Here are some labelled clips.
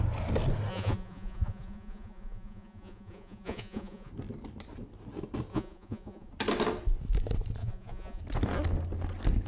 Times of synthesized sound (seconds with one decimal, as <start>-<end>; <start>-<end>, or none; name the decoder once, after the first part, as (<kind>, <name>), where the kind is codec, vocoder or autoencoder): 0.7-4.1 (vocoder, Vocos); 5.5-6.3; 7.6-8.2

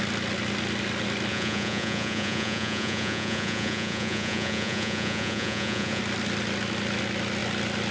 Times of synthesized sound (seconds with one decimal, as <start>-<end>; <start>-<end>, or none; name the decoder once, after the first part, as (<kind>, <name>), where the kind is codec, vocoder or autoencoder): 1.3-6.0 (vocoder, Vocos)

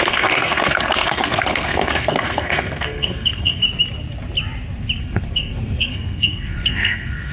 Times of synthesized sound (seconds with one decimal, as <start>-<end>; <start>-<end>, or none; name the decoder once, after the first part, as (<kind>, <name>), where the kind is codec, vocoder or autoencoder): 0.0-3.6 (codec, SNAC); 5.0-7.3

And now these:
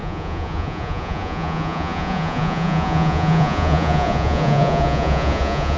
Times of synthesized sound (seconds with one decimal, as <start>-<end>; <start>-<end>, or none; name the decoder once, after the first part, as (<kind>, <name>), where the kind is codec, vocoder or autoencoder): 0.0-5.8 (vocoder, Vocos)

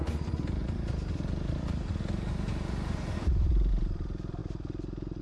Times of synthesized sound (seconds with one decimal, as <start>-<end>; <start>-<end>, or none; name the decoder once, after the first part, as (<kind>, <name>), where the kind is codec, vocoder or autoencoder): 0.6-3.7 (vocoder, BigVGAN v2)

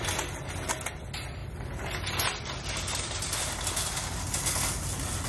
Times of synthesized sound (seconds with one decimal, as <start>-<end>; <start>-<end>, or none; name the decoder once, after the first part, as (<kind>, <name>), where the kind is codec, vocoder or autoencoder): none